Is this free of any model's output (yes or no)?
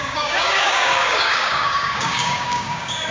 no